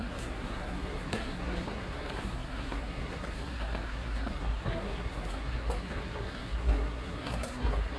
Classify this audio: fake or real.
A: fake